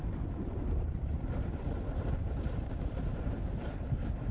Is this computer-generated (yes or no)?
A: yes